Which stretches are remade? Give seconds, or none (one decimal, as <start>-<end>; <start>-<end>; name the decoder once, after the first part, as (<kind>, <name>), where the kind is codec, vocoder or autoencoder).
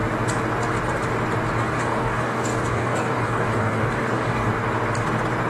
1.6-4.5 (codec, DAC)